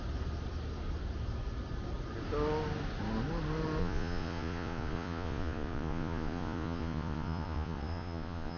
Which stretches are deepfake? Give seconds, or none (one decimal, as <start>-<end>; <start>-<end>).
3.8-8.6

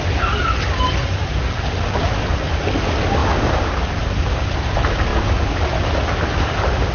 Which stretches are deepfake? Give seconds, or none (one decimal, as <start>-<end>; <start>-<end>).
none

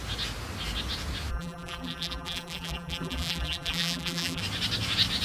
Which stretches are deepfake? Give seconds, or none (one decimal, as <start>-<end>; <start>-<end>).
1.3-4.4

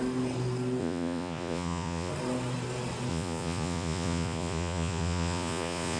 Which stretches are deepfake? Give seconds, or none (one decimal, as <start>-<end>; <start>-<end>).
0.8-2.1; 3.1-6.0